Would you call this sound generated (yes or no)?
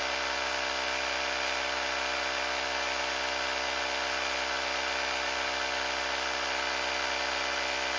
no